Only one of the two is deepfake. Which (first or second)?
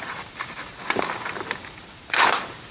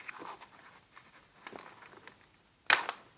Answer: first